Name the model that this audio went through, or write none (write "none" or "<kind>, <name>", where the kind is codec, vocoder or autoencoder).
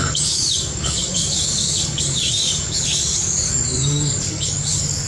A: codec, DAC